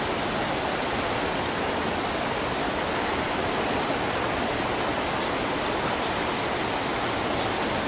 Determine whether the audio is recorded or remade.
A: recorded